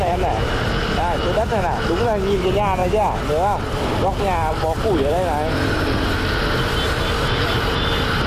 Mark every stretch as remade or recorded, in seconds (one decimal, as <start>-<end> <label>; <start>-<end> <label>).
0.0-8.3 recorded